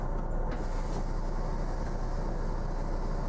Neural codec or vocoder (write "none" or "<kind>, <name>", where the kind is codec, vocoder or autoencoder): none